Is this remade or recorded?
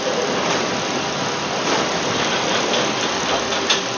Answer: recorded